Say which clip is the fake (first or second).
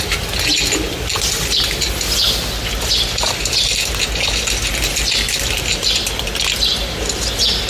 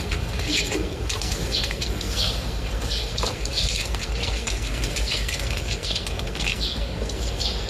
second